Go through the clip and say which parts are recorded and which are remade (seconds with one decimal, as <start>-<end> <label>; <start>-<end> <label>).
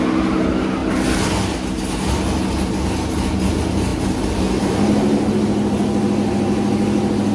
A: 0.0-7.3 recorded